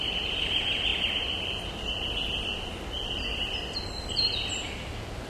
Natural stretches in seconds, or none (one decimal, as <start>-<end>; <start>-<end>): 0.9-4.1